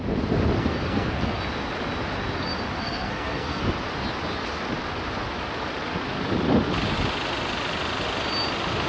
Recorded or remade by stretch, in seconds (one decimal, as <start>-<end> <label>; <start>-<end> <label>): 0.0-0.6 recorded; 0.6-1.4 remade; 1.4-2.8 recorded; 2.8-3.6 remade; 3.6-8.9 recorded